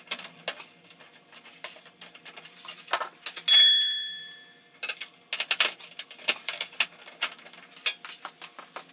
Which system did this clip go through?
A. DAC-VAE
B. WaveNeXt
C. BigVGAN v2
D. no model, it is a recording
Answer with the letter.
D